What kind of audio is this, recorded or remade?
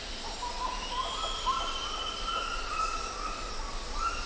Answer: recorded